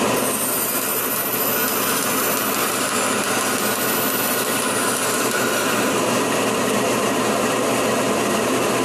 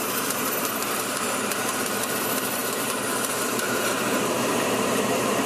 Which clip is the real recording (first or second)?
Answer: first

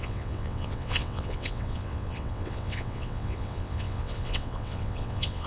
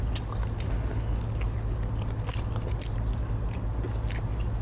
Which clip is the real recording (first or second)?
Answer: second